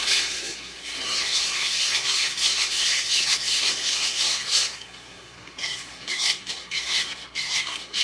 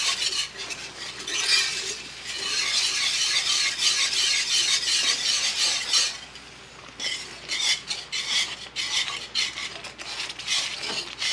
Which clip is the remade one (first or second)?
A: first